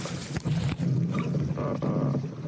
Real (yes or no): yes